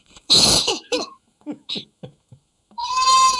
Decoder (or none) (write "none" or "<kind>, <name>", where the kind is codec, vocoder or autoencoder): autoencoder, DAC-VAE